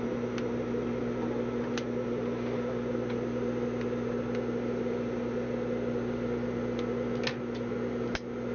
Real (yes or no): yes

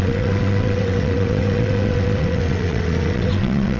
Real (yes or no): no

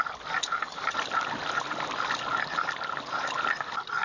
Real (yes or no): yes